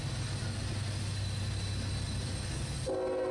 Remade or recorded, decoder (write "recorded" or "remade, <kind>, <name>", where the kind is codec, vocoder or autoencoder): recorded